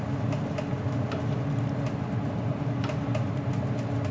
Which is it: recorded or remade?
recorded